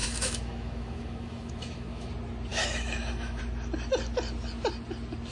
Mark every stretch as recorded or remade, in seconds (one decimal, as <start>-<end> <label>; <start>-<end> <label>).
0.0-2.1 remade; 2.1-2.5 recorded; 2.5-3.4 remade; 3.4-5.3 recorded